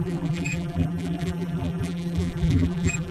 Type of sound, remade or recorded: remade